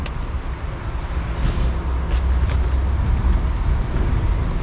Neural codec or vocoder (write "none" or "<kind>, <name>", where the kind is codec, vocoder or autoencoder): none